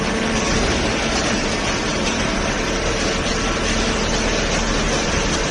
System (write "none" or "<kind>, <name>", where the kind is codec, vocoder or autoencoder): none